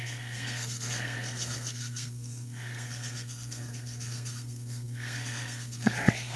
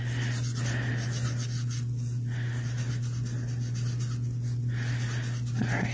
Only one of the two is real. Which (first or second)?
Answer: second